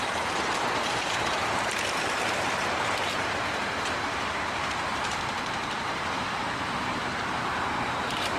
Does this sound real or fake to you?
fake